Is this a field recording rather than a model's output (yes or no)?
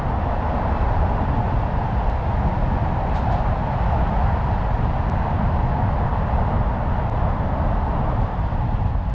yes